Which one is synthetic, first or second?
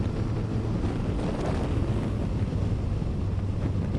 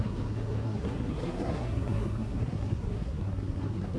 second